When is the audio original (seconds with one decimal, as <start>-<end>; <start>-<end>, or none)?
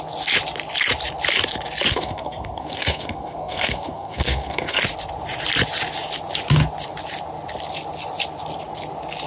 0.0-1.9; 4.8-9.3